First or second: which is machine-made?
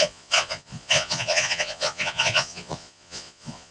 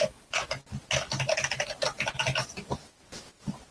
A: first